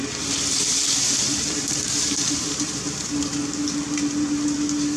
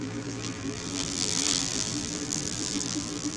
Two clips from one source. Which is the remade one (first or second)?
second